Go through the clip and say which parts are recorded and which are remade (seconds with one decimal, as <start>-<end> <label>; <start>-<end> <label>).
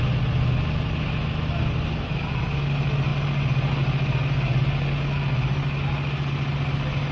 0.0-7.1 recorded